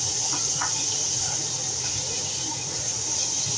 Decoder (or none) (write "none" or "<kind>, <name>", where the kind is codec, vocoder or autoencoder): vocoder, Vocos